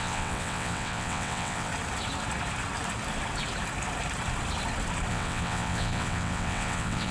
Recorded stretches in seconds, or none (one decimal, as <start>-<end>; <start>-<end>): 1.7-5.1